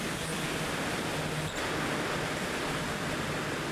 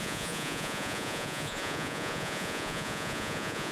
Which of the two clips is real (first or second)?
first